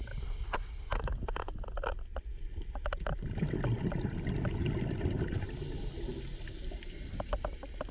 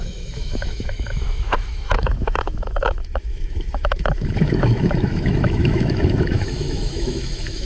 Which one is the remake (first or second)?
second